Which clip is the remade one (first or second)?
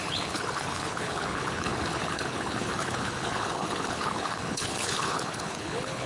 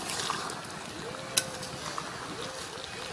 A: first